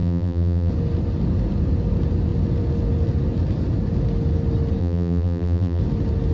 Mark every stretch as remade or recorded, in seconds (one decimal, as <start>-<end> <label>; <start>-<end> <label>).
0.0-0.7 remade; 0.7-4.8 recorded; 4.8-5.8 remade; 5.8-6.3 recorded